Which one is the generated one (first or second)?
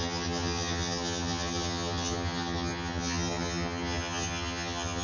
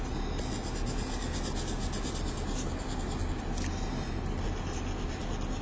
first